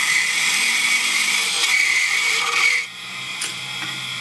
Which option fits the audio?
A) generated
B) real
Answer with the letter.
A